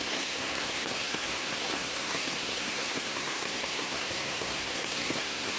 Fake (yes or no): yes